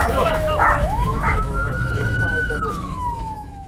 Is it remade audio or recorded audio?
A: remade